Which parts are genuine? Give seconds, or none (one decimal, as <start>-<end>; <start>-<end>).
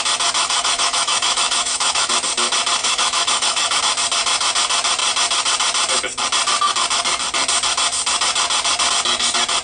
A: 0.0-0.4; 2.1-2.8; 3.8-9.6